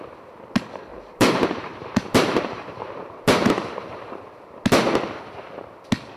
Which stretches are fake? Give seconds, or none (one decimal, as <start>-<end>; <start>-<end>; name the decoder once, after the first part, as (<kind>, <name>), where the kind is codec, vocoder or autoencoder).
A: 0.9-4.6 (vocoder, BigVGAN v2)